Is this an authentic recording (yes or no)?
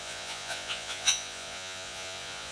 no